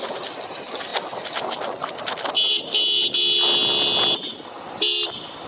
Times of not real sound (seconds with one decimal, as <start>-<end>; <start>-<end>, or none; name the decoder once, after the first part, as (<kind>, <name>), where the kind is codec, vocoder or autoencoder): none